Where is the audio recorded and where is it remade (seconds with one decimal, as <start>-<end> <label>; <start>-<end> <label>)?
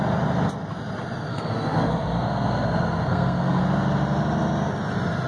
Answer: 0.0-1.3 recorded; 1.3-3.6 remade; 3.6-5.3 recorded